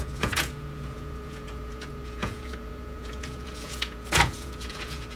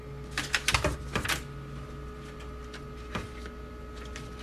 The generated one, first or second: first